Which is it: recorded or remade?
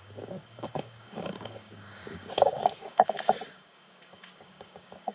remade